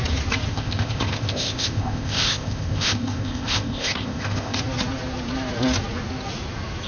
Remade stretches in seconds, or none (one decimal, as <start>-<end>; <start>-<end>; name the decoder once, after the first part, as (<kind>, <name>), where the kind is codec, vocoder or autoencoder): 0.5-4.6 (codec, ZipCodec)